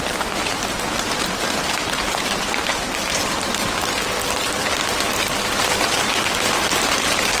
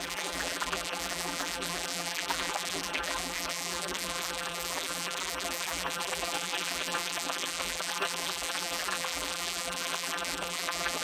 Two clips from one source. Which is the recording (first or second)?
first